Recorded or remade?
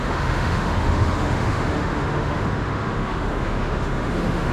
remade